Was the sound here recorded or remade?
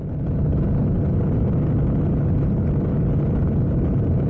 recorded